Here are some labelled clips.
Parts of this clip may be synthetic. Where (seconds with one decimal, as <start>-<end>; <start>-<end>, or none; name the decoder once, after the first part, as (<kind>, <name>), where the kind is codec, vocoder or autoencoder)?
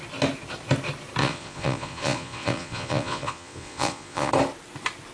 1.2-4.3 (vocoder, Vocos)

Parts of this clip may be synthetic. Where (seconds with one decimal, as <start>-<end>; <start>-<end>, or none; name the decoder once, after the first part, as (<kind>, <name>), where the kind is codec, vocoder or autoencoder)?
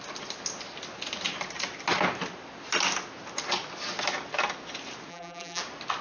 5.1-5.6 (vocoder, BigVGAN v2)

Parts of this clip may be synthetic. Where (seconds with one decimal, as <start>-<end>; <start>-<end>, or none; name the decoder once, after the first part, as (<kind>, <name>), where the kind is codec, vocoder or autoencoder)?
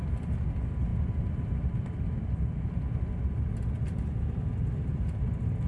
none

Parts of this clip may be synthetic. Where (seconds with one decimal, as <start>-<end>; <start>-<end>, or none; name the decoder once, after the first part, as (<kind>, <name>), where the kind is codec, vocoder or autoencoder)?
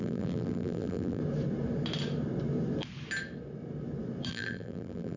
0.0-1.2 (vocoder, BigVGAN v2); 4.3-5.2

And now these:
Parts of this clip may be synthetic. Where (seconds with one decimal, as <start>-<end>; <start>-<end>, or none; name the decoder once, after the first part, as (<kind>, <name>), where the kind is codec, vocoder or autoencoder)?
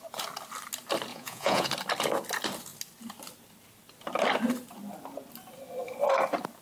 1.1-1.7 (vocoder, Vocos)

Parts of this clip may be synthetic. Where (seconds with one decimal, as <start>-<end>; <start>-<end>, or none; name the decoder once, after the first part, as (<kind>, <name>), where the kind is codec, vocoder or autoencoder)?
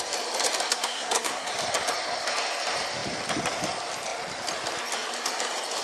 0.7-1.5 (codec, SNAC)